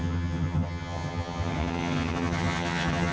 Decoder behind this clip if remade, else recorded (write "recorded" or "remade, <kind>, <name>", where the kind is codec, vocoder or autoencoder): remade, vocoder, HiFi-GAN